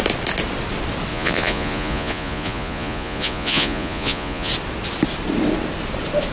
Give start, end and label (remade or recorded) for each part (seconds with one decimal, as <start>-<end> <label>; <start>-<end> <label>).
0.0-1.1 recorded; 1.1-4.5 remade; 4.5-6.3 recorded